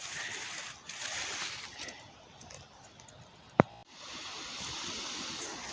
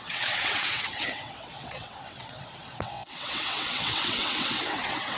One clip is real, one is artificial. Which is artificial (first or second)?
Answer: second